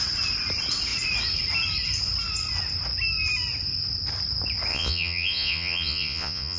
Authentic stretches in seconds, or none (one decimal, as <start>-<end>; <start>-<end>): 0.0-4.7